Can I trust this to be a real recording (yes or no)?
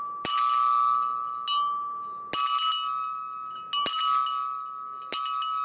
yes